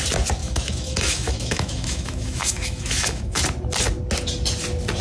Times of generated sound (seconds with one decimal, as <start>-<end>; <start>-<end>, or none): 0.4-3.4